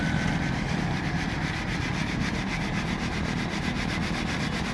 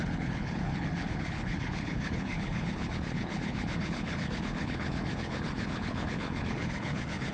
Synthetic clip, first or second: second